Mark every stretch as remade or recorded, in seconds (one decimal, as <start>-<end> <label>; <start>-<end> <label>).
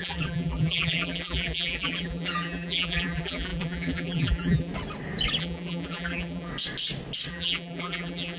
0.0-4.7 remade; 4.7-5.4 recorded; 5.4-6.5 remade; 6.5-7.3 recorded; 7.3-8.4 remade